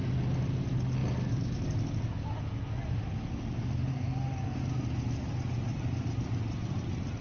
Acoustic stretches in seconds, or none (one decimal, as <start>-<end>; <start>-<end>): 0.0-7.2